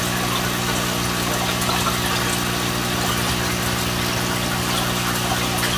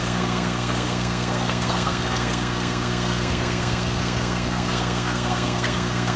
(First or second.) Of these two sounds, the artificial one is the second